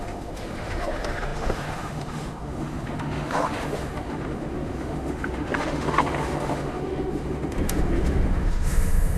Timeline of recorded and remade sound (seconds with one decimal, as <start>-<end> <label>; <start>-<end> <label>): 0.0-9.2 remade